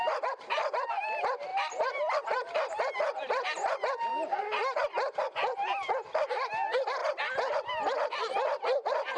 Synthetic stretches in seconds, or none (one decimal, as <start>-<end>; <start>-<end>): 0.0-4.1; 5.2-7.0; 7.8-9.2